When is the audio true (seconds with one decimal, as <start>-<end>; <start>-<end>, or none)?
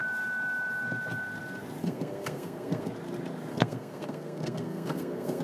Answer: 0.0-1.8; 2.9-3.5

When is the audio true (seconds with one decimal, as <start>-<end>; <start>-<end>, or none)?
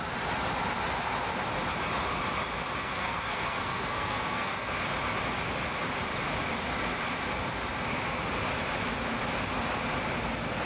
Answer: 0.0-2.8; 4.7-10.7